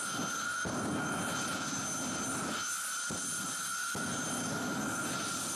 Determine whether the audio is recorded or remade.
recorded